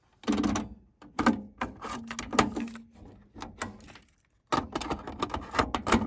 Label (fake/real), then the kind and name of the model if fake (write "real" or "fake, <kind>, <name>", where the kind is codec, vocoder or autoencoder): real